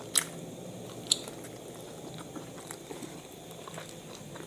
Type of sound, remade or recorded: remade